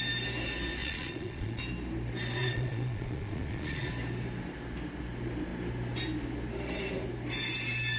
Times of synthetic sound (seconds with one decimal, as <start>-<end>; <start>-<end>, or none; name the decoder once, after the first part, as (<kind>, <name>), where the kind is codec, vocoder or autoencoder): 0.8-1.6 (vocoder, Vocos); 2.4-3.9